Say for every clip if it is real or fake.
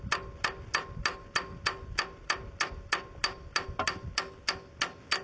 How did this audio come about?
real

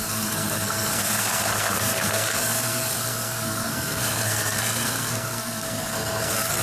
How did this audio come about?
fake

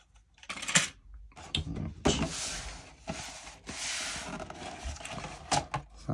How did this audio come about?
real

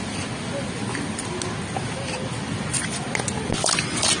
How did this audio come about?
real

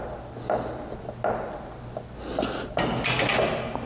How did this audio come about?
real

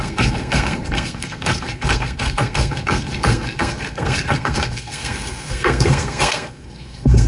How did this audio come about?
fake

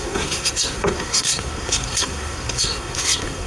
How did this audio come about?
fake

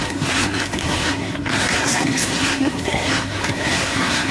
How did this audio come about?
fake